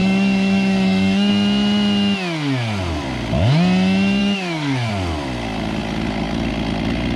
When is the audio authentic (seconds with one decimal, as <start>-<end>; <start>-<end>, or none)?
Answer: 1.3-4.2; 4.9-7.2